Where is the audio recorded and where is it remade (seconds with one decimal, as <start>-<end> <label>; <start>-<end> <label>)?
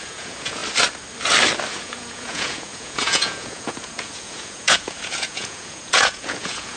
0.0-0.6 remade; 0.6-1.7 recorded; 1.7-6.8 remade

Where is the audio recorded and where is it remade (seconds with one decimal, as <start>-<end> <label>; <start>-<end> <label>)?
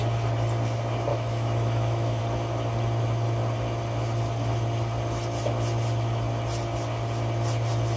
0.0-1.1 recorded; 1.1-2.2 remade; 2.2-8.0 recorded